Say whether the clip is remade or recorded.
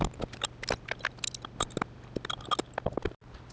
recorded